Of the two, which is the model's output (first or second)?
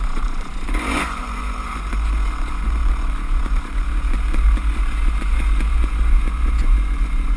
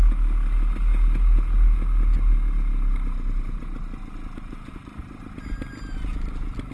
first